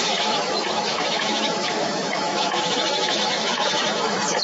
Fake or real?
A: fake